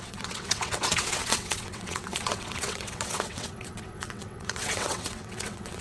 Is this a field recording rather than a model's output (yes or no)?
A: no